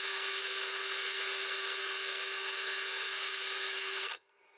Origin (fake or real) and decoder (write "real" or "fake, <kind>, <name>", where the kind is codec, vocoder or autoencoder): fake, codec, SNAC